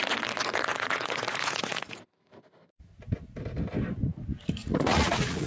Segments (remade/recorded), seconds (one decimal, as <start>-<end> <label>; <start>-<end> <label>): 0.0-0.7 recorded; 0.7-2.0 remade; 2.0-4.6 recorded; 4.6-5.5 remade